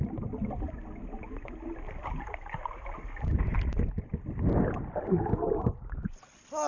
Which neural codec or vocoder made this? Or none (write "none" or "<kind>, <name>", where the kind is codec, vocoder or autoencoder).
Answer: none